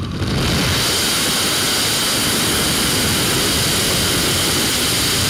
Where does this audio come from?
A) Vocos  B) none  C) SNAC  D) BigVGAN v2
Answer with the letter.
B